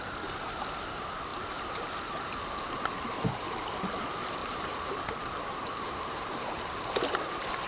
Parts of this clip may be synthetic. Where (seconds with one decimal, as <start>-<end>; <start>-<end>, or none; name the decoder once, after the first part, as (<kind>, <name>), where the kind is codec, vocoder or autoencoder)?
4.4-6.5 (vocoder, BigVGAN v2)